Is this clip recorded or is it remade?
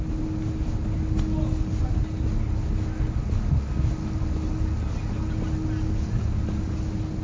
recorded